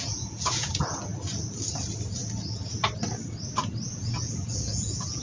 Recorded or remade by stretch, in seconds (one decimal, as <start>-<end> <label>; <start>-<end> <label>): 0.0-1.1 remade; 1.1-3.9 recorded; 3.9-5.2 remade